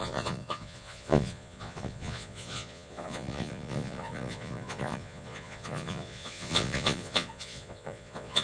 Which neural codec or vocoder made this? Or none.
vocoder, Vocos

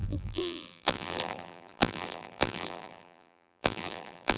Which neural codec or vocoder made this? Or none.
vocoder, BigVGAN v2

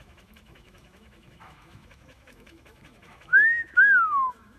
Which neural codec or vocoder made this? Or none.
autoencoder, DAC-VAE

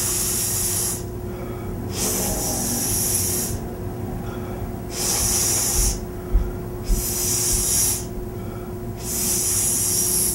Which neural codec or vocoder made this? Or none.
none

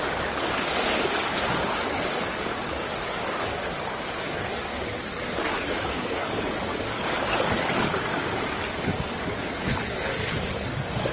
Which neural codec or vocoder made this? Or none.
codec, DAC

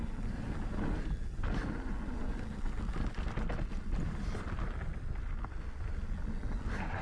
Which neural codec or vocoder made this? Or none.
none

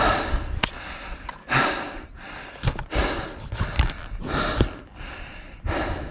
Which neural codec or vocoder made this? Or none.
none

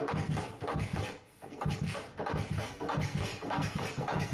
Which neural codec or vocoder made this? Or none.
codec, SNAC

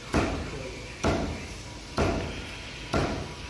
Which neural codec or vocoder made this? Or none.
vocoder, BigVGAN v2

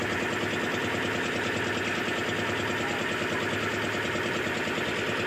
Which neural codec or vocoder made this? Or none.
none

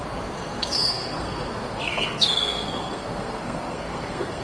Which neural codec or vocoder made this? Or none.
codec, SNAC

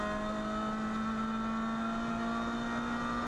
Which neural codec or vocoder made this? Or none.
none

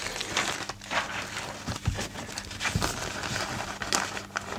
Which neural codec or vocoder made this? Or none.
none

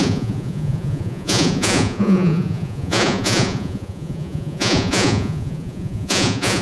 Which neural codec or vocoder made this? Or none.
vocoder, Vocos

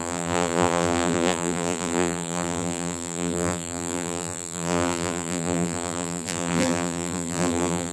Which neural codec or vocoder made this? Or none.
vocoder, BigVGAN v2